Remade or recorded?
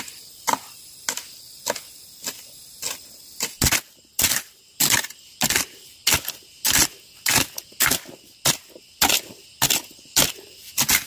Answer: recorded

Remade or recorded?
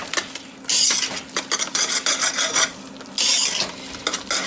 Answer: recorded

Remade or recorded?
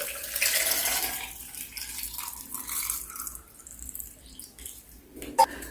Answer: recorded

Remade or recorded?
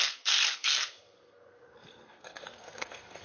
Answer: remade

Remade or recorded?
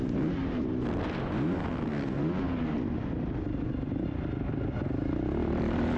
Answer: recorded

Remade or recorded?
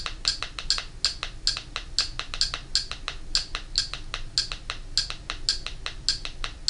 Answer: recorded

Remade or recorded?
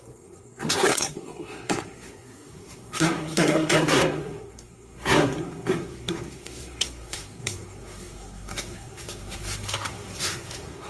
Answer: remade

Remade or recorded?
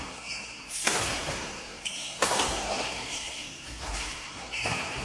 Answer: remade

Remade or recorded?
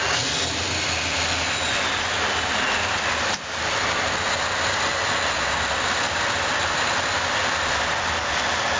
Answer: recorded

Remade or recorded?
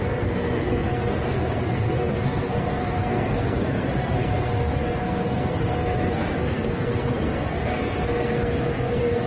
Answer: remade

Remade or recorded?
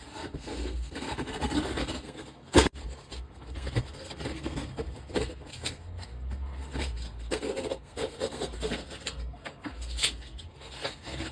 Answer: remade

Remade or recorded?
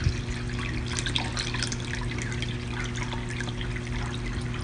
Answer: recorded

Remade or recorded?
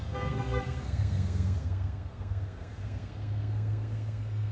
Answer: remade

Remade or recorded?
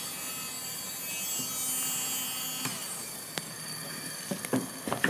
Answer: recorded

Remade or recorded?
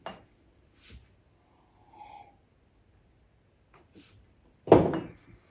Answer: recorded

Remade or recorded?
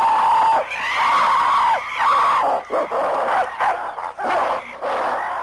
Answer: recorded